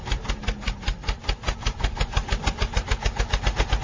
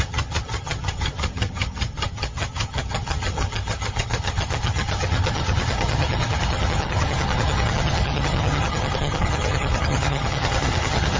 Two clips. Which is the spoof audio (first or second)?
second